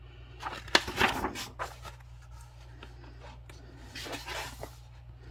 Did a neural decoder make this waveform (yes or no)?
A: no